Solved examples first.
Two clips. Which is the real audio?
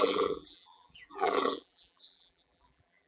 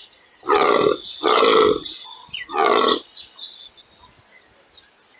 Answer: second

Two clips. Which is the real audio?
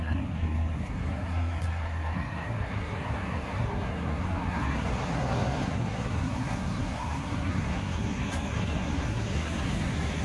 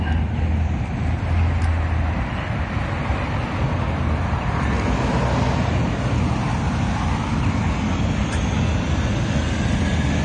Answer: second